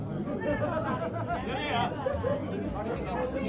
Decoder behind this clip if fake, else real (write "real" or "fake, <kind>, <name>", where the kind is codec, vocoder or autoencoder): real